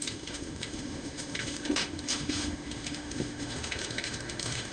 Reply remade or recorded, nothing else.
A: remade